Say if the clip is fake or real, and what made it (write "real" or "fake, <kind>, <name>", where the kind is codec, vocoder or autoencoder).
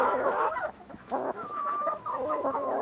fake, autoencoder, DAC-VAE